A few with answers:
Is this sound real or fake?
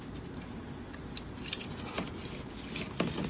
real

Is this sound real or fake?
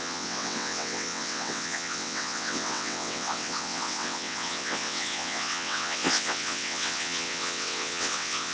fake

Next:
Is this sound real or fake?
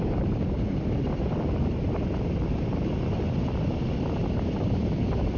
real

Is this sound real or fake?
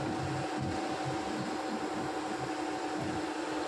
real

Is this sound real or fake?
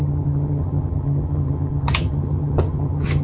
fake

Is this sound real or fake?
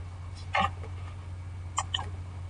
real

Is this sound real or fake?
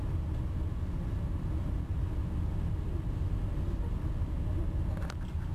real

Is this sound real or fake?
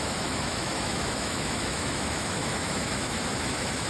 fake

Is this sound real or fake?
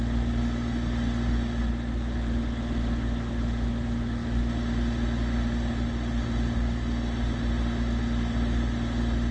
real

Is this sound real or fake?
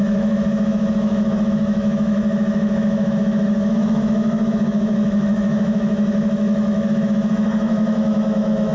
fake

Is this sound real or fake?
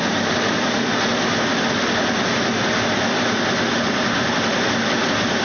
real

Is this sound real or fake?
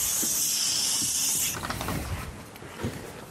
fake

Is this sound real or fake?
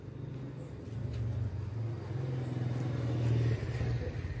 real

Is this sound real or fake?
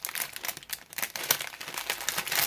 real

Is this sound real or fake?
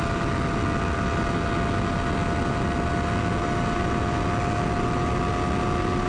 real